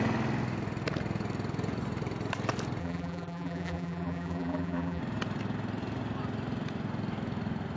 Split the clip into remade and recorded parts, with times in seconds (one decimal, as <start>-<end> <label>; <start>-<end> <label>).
0.0-2.8 recorded; 2.8-5.0 remade; 5.0-7.8 recorded